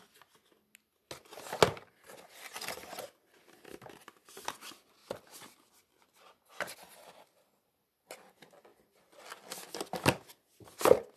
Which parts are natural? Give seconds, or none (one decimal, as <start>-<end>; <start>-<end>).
0.0-11.2